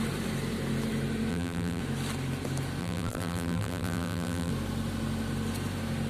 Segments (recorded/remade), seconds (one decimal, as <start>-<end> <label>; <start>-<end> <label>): 0.0-1.3 recorded; 1.3-1.8 remade; 1.8-2.8 recorded; 2.8-4.5 remade; 4.5-6.1 recorded